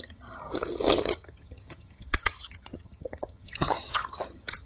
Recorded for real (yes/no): no